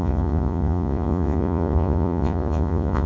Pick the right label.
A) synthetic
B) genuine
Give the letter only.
A